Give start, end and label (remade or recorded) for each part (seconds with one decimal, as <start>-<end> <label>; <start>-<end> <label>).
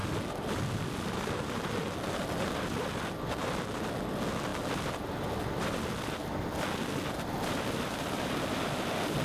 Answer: 0.0-9.2 recorded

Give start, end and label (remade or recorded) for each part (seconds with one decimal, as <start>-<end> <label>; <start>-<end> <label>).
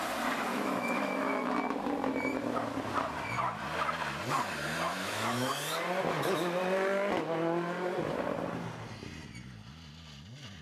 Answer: 0.0-0.5 recorded; 0.5-1.5 remade; 1.5-4.9 recorded; 4.9-5.5 remade; 5.5-10.6 recorded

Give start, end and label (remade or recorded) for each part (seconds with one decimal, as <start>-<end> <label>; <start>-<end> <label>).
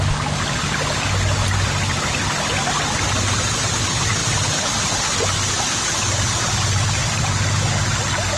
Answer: 0.0-8.4 recorded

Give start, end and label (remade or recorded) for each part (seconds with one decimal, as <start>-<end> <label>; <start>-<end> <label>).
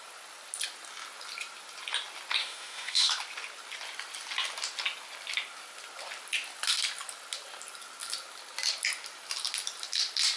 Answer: 0.0-2.4 recorded; 2.4-3.1 remade; 3.1-10.4 recorded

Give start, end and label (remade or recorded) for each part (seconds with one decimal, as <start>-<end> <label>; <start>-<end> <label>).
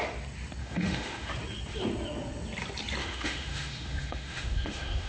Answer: 0.0-0.6 recorded; 0.6-1.3 remade; 1.3-3.0 recorded; 3.0-5.1 remade